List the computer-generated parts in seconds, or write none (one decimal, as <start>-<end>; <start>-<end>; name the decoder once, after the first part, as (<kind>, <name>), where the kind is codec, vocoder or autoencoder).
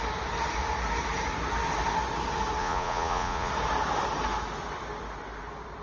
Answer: 2.6-3.5 (vocoder, Vocos)